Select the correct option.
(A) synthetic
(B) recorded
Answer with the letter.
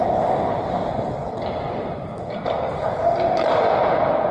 B